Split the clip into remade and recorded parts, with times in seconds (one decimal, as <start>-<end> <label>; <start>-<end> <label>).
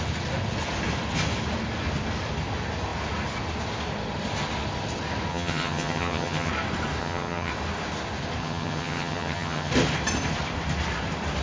0.0-5.3 recorded; 5.3-6.5 remade; 6.5-7.0 recorded; 7.0-7.5 remade; 7.5-8.4 recorded; 8.4-9.7 remade; 9.7-11.4 recorded